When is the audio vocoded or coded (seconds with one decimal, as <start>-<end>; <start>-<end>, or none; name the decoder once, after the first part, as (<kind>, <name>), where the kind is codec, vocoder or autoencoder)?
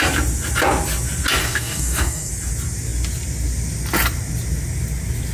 1.4-2.3 (codec, DAC)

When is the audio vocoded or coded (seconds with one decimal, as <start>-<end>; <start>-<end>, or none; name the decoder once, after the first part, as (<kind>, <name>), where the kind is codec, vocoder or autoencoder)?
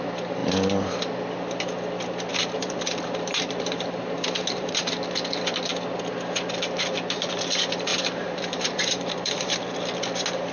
2.3-4.8 (vocoder, BigVGAN v2); 7.9-9.6